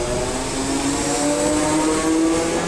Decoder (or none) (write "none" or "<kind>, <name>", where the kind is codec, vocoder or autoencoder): none